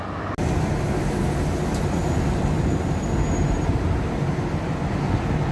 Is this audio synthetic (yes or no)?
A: no